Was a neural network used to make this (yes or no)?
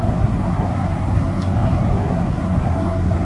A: yes